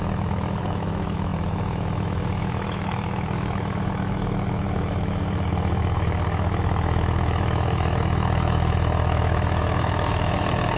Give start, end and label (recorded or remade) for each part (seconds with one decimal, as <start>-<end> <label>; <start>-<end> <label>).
0.0-10.8 remade